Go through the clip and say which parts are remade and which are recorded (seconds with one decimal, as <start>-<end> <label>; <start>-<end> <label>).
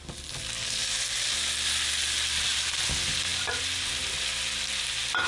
0.0-5.3 recorded